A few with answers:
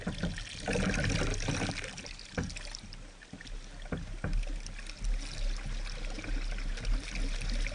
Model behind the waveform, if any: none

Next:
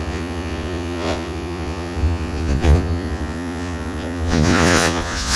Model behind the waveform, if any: vocoder, Vocos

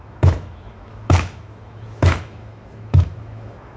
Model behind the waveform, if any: autoencoder, DAC-VAE